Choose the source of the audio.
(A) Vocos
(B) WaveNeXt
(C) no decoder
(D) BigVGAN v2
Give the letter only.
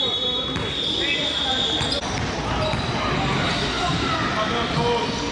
C